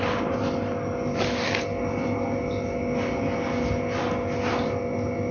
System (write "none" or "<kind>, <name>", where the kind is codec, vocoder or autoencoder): none